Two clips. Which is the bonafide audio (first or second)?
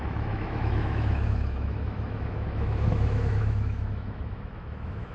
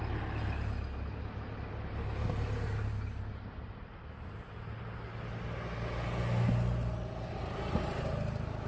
second